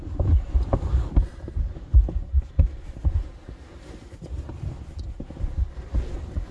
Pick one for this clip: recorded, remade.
recorded